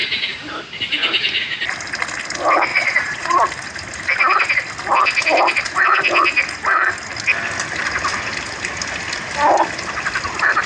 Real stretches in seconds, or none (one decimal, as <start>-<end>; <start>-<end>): 0.0-2.7; 3.4-10.7